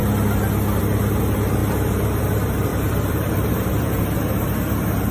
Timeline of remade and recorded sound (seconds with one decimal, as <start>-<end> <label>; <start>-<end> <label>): 0.0-2.7 recorded; 2.7-3.9 remade; 3.9-5.1 recorded